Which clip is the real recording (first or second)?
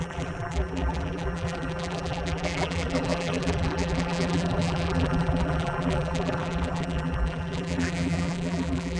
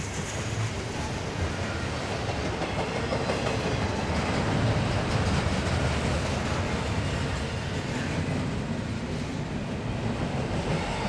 second